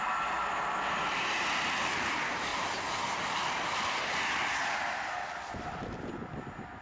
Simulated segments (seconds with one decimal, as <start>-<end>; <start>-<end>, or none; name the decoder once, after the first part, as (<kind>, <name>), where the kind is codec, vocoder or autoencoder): none

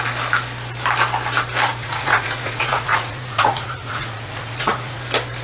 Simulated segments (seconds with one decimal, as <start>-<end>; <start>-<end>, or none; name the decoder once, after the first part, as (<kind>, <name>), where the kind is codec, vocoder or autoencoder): 1.8-5.0 (vocoder, Vocos)

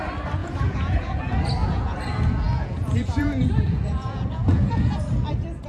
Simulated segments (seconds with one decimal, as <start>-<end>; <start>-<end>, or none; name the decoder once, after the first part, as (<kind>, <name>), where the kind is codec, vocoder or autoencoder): 0.4-1.2 (vocoder, Vocos); 1.6-5.0